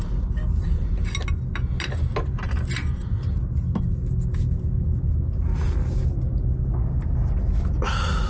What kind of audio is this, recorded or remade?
recorded